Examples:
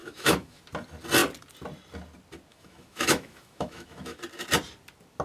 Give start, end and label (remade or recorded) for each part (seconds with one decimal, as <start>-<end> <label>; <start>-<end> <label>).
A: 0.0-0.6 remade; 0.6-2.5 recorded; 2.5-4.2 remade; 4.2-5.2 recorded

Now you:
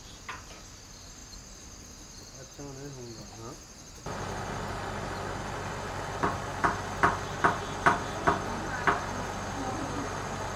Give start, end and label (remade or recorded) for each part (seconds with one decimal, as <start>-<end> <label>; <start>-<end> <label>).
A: 0.0-10.6 recorded

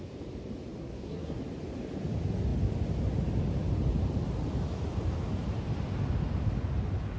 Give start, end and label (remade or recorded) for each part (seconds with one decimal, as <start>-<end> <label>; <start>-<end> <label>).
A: 0.0-0.8 recorded; 0.8-1.4 remade; 1.4-7.2 recorded

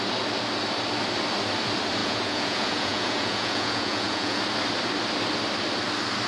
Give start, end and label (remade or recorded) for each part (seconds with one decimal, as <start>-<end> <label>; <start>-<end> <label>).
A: 0.0-2.0 recorded; 2.0-4.4 remade; 4.4-6.3 recorded

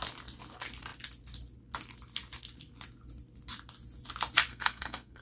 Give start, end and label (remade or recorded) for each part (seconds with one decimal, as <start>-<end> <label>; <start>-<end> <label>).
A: 0.0-4.5 recorded; 4.5-5.2 remade

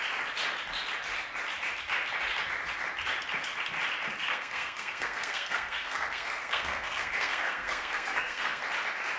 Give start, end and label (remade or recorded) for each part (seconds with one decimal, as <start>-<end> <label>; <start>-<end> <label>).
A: 0.0-4.2 recorded; 4.2-8.6 remade; 8.6-9.2 recorded

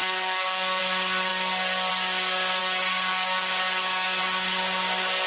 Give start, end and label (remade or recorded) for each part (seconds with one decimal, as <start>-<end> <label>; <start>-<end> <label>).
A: 0.0-0.8 remade; 0.8-2.6 recorded; 2.6-4.2 remade; 4.2-5.3 recorded

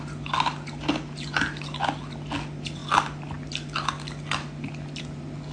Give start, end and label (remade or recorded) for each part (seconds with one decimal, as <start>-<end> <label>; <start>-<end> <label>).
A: 0.0-5.5 recorded